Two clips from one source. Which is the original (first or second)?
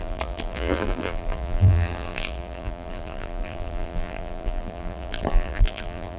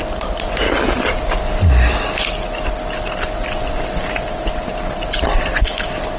second